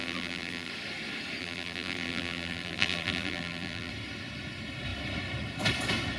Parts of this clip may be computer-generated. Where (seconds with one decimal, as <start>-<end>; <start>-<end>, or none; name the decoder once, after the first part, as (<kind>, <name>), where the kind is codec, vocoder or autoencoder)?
0.0-0.7 (vocoder, BigVGAN v2); 1.4-3.9